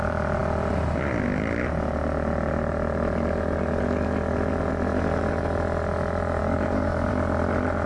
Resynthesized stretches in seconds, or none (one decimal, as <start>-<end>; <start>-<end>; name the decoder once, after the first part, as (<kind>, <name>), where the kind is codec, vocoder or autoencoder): 6.4-7.1 (codec, DAC)